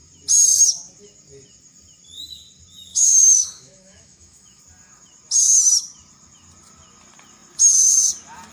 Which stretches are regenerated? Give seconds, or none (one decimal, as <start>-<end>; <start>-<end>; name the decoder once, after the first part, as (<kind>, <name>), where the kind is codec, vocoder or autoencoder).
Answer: 2.9-4.6 (autoencoder, DAC-VAE)

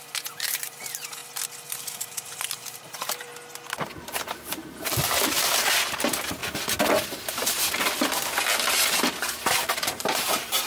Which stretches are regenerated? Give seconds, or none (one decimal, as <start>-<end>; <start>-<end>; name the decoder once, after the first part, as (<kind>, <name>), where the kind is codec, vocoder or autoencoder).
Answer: 0.0-1.2 (vocoder, BigVGAN v2); 1.9-3.3; 4.0-6.4; 9.7-10.7

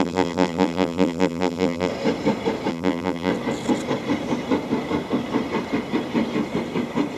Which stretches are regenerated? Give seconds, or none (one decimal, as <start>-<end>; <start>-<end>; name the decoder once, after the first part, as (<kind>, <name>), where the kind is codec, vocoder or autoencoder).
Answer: 0.0-1.9 (vocoder, BigVGAN v2); 2.7-3.3